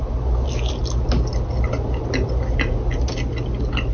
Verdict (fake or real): real